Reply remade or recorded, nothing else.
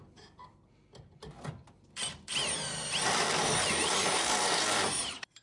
remade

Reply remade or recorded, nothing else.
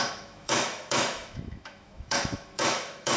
remade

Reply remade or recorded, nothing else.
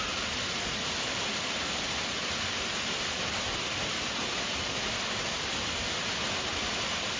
recorded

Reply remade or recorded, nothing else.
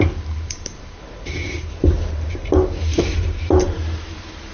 remade